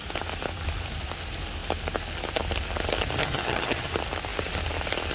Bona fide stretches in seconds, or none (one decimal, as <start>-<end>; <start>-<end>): 0.0-3.2; 3.9-5.1